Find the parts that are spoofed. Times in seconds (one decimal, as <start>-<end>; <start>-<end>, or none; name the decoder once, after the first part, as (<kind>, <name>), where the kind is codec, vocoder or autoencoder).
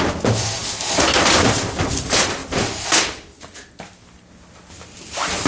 none